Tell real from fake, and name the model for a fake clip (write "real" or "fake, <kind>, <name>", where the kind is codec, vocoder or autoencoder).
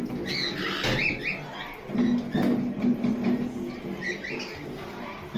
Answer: real